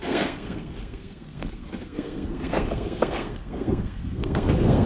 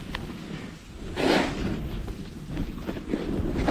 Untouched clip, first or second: second